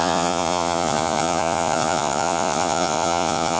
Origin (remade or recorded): remade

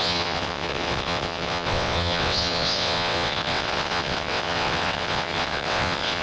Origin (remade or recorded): remade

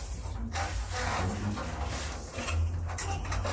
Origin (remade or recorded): recorded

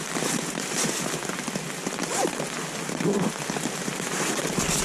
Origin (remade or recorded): recorded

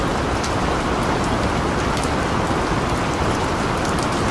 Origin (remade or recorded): recorded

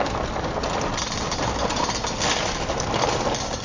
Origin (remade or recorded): recorded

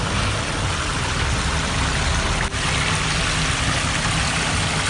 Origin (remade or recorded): recorded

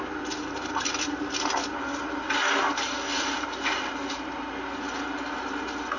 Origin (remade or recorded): recorded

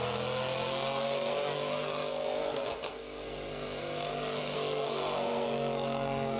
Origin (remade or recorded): remade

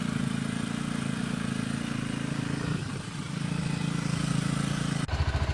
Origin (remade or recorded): recorded